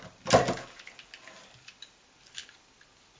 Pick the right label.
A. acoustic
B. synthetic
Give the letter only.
A